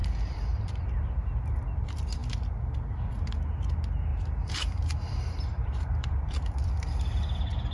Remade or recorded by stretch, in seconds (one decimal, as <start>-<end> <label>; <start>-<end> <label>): 0.0-0.8 remade; 0.8-4.1 recorded; 4.1-6.7 remade; 6.7-7.7 recorded